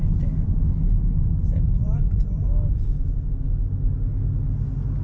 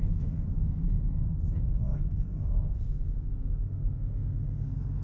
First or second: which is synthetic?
second